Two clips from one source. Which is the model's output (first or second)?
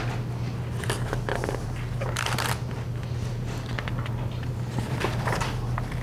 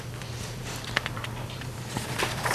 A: second